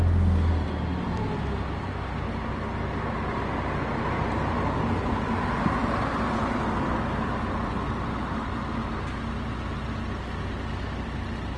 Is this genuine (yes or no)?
yes